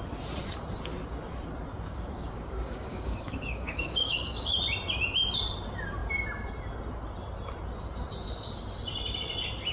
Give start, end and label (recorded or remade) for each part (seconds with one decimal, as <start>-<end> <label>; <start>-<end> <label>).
0.0-1.7 recorded; 1.7-4.6 remade; 4.6-9.7 recorded